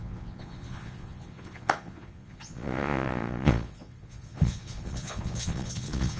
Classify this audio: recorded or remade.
remade